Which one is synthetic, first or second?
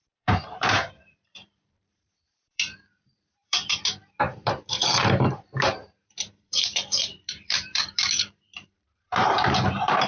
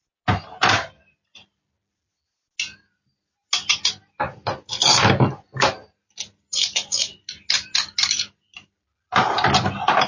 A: first